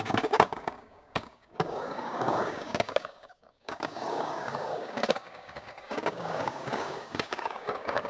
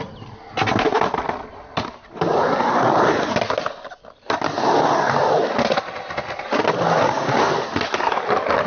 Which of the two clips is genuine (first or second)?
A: second